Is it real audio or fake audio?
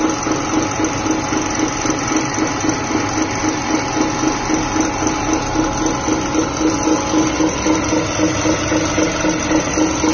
real